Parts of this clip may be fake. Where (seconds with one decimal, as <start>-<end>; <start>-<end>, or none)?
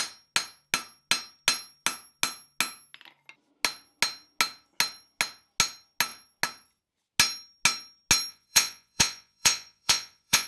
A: 8.3-10.5